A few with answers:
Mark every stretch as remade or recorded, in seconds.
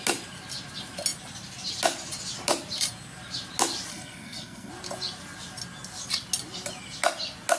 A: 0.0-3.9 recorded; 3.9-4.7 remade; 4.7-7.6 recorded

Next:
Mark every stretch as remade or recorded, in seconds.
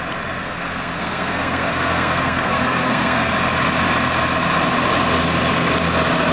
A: 0.0-0.4 recorded; 0.4-3.3 remade; 3.3-6.3 recorded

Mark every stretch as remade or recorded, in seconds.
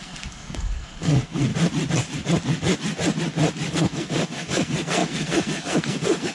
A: 0.0-1.5 remade; 1.5-3.7 recorded; 3.7-6.3 remade